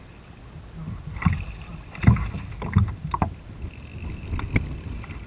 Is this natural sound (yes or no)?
yes